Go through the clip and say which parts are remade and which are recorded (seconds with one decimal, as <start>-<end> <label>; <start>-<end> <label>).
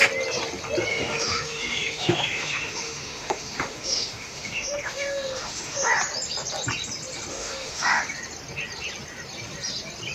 0.0-0.9 recorded; 0.9-5.9 remade; 5.9-7.3 recorded; 7.3-8.0 remade; 8.0-10.1 recorded